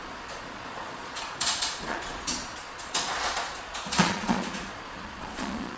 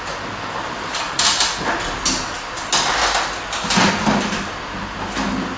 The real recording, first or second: second